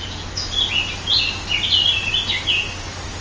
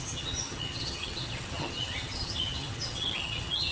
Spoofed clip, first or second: second